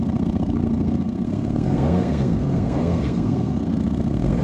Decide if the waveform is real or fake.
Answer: fake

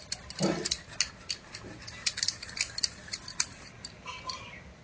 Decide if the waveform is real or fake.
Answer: real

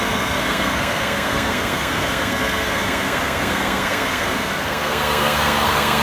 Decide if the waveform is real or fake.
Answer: fake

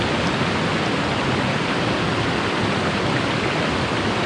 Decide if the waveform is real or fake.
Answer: real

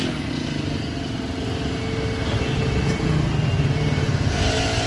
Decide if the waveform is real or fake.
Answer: real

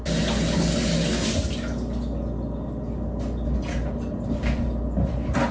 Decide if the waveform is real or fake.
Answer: real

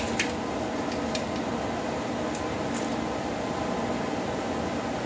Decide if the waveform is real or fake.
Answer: real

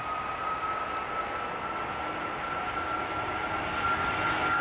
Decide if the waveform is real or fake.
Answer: real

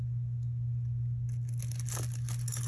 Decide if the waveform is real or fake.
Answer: real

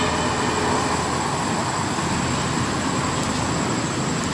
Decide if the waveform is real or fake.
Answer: real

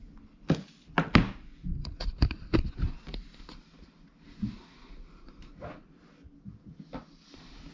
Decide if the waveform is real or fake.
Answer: real